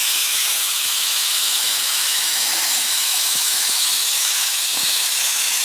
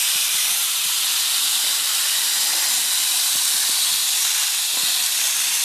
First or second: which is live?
second